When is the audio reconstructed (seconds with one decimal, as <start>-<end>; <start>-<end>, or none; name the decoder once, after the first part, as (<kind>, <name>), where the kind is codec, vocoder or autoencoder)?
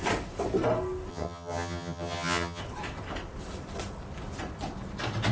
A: 1.1-2.6 (vocoder, HiFi-GAN)